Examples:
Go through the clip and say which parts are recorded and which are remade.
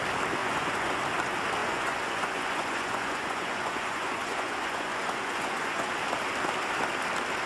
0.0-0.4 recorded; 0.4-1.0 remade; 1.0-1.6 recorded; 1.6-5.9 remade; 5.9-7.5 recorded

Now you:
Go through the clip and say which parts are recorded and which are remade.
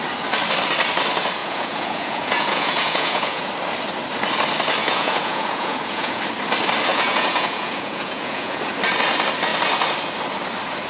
0.0-1.4 recorded; 1.4-3.5 remade; 3.5-4.8 recorded; 4.8-6.2 remade; 6.2-6.9 recorded; 6.9-8.6 remade; 8.6-10.9 recorded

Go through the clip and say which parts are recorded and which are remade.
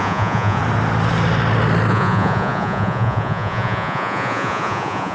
0.0-0.6 remade; 0.6-1.9 recorded; 1.9-5.1 remade